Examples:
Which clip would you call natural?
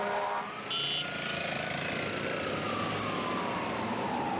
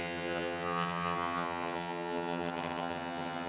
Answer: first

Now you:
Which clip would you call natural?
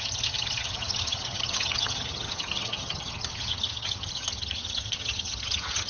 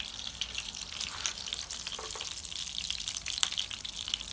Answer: second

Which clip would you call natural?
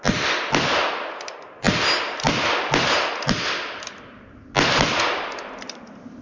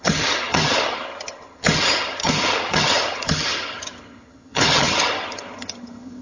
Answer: first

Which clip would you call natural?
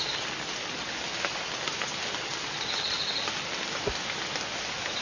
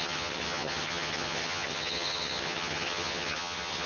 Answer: first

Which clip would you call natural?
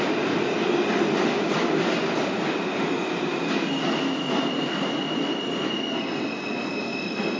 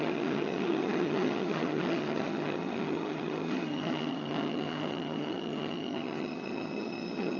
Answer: first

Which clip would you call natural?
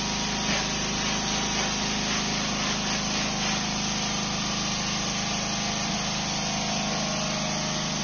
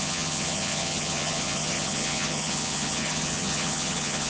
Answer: first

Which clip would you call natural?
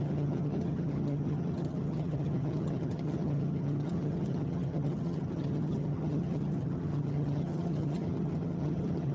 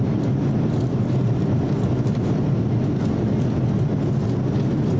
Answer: second